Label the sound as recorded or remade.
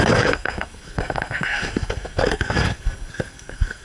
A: remade